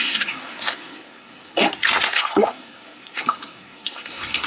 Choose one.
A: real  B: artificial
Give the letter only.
B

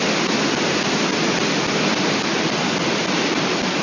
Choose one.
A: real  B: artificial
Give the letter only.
A